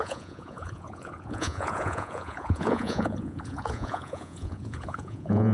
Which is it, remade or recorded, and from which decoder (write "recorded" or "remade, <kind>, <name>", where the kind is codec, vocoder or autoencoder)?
remade, vocoder, Vocos